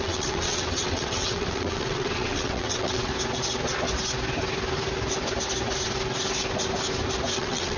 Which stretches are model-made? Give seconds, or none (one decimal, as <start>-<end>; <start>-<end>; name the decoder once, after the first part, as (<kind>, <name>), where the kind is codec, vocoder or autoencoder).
0.0-3.1 (vocoder, WaveNeXt); 7.3-7.8

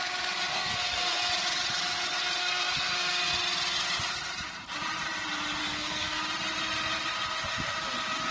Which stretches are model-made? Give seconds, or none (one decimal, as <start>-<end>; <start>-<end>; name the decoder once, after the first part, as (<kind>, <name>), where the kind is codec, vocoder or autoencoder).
0.5-1.3 (codec, SNAC); 2.4-3.3; 5.6-6.2

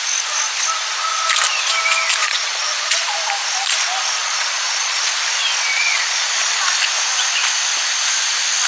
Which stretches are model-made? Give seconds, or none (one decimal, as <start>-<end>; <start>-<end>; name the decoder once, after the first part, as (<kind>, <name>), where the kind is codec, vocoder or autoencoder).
2.2-3.0 (vocoder, Vocos); 4.2-5.0; 5.7-6.6

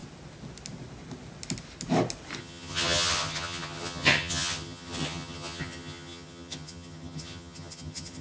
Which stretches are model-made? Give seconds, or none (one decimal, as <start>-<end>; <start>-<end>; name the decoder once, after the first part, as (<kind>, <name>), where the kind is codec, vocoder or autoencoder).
2.4-8.2 (vocoder, HiFi-GAN)

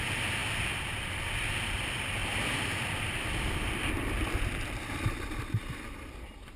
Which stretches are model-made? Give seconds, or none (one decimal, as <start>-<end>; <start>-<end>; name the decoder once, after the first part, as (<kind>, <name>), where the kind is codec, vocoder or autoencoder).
2.2-6.6 (vocoder, BigVGAN v2)

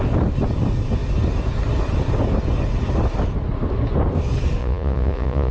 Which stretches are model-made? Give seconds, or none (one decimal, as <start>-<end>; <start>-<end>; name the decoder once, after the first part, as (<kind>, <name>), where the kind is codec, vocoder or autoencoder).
4.6-5.5 (vocoder, Vocos)

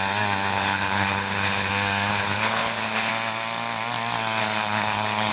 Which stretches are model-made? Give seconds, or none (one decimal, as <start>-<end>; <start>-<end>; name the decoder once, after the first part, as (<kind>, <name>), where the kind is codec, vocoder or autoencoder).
0.5-1.7 (codec, HILCodec); 2.1-3.1; 4.4-5.3